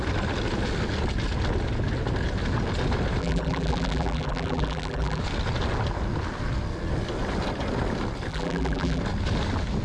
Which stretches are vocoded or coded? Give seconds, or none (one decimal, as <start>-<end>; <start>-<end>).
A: 3.2-5.2; 8.3-9.0